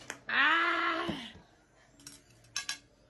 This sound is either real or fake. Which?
real